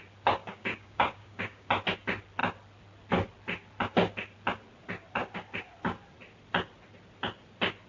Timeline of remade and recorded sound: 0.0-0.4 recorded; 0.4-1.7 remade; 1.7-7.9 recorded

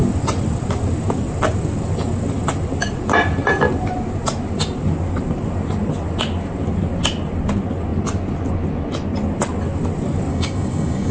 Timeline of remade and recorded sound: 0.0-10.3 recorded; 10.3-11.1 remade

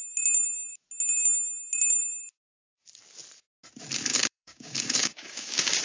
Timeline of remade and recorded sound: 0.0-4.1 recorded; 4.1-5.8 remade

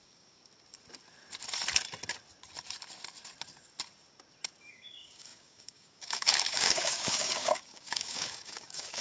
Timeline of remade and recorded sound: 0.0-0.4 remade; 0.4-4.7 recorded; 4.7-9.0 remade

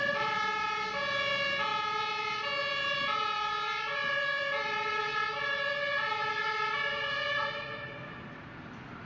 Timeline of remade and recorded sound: 0.0-9.1 recorded

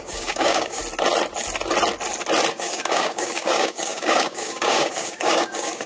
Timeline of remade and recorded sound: 0.0-0.8 remade; 0.8-2.5 recorded; 2.5-5.9 remade

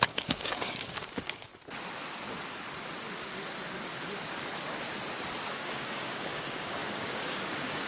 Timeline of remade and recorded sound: 0.0-1.5 remade; 1.5-5.5 recorded; 5.5-7.9 remade